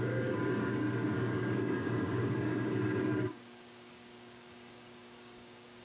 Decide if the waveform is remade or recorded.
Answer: remade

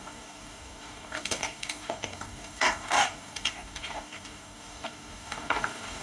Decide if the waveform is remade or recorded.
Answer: remade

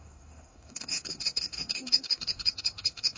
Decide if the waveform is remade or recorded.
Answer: remade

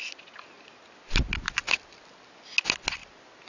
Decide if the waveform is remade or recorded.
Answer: recorded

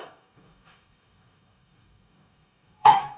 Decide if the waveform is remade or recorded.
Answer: remade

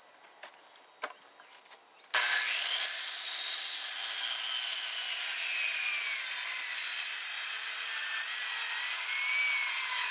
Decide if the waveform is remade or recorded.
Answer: recorded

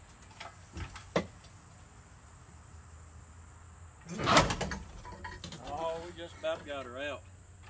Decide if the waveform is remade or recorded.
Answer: recorded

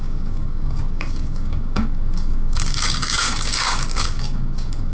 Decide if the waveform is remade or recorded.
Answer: remade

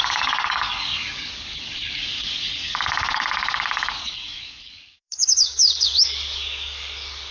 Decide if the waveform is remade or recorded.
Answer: remade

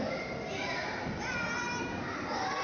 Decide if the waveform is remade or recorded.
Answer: recorded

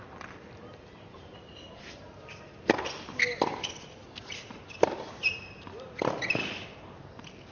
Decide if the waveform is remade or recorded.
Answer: recorded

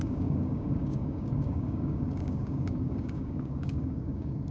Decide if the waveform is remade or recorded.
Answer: remade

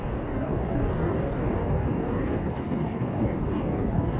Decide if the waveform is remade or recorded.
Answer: remade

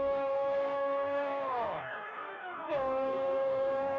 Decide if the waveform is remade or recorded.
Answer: remade